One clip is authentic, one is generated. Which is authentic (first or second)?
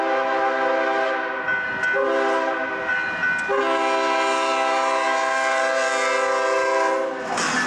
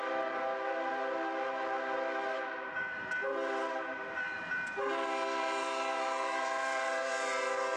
first